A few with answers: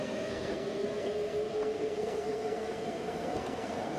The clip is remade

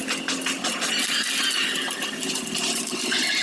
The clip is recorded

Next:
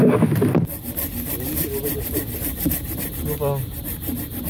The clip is recorded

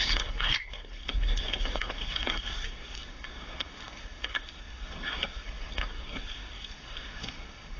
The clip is remade